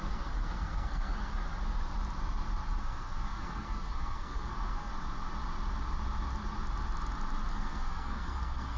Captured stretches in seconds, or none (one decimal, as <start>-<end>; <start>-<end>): 1.3-2.8; 4.9-7.5